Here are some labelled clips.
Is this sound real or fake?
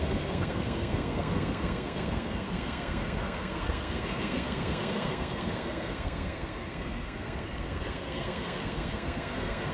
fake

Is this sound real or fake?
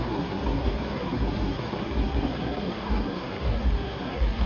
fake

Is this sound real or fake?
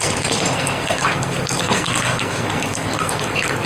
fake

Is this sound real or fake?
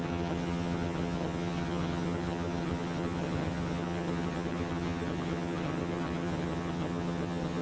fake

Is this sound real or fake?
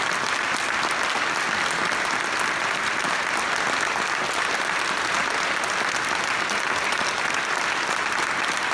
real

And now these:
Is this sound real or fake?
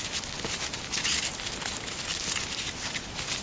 real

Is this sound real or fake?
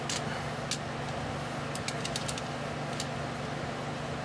real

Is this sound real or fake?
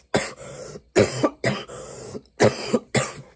real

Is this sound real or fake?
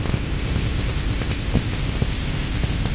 fake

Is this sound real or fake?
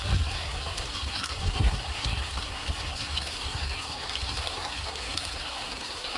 fake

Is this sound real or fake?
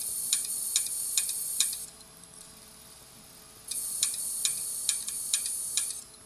real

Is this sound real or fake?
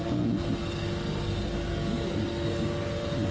real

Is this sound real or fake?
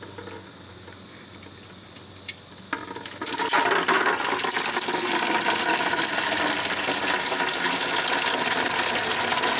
real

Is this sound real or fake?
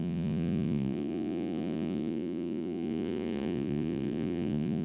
fake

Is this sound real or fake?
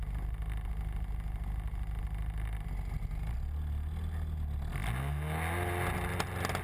real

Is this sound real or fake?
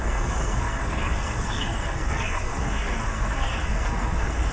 fake